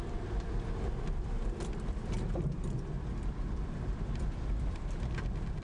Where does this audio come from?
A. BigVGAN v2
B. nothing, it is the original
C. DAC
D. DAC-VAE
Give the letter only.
A